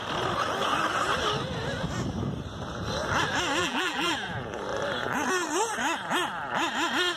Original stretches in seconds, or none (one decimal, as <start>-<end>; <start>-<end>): 0.0-3.6; 4.1-7.2